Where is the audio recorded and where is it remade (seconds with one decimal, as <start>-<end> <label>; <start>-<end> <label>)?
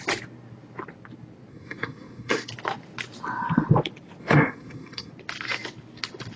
0.0-1.5 recorded; 1.5-2.5 remade; 2.5-4.2 recorded; 4.2-5.1 remade; 5.1-6.4 recorded